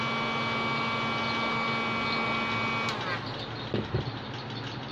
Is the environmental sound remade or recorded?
recorded